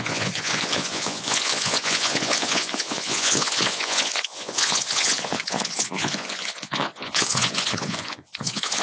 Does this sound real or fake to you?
fake